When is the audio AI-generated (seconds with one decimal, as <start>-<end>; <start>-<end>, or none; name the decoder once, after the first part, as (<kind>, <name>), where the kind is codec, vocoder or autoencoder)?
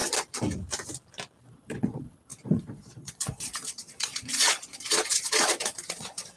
1.4-6.4 (vocoder, Vocos)